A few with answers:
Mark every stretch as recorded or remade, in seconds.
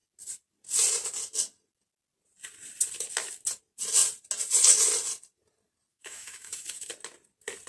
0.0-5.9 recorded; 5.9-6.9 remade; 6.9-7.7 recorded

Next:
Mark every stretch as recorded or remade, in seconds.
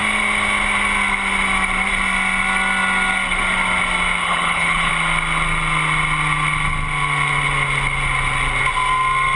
0.0-4.2 recorded; 4.2-4.9 remade; 4.9-9.4 recorded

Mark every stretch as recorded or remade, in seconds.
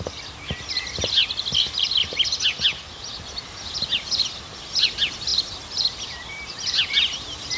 0.0-7.6 recorded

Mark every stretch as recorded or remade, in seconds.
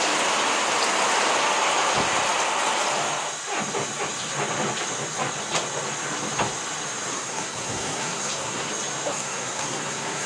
0.0-7.1 recorded; 7.1-8.7 remade; 8.7-9.1 recorded; 9.1-10.3 remade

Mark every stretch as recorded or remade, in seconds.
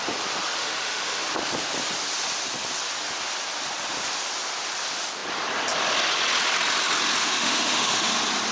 0.0-0.6 recorded; 0.6-1.2 remade; 1.2-7.2 recorded; 7.2-8.1 remade; 8.1-8.5 recorded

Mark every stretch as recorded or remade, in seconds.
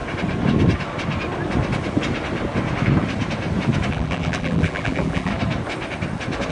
0.0-3.9 recorded; 3.9-5.3 remade; 5.3-6.5 recorded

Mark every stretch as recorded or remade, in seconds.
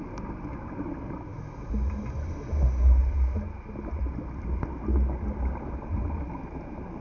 0.0-7.0 recorded